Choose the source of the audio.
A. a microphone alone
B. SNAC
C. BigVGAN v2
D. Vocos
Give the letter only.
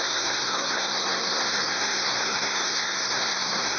B